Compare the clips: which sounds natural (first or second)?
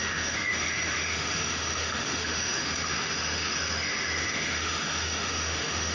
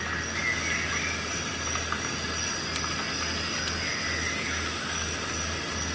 second